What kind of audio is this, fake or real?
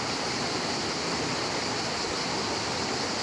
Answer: real